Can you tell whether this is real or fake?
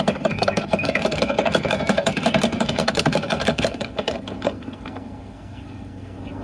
fake